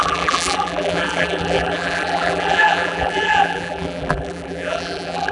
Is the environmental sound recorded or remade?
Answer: remade